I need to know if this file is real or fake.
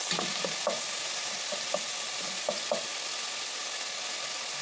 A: real